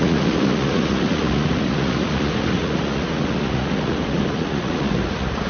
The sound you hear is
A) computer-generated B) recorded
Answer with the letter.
A